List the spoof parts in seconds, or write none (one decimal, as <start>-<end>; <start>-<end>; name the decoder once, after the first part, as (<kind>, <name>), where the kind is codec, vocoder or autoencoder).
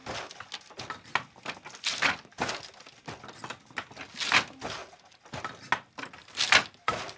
none